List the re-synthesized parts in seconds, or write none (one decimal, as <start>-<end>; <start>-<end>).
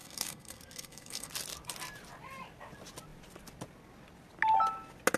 0.0-1.3